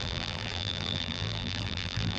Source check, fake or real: fake